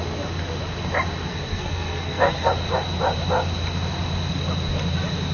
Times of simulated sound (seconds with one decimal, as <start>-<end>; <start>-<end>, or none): 1.3-2.5